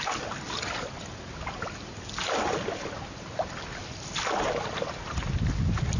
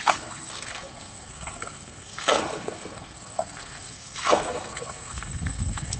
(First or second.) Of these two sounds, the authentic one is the first